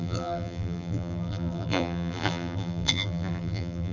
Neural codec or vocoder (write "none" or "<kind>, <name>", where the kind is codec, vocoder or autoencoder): vocoder, BigVGAN v2